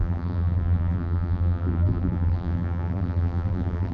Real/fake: fake